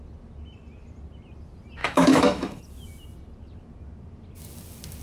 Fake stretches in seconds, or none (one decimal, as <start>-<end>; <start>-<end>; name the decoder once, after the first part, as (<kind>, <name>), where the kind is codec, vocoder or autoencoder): 1.8-2.6 (autoencoder, DAC-VAE)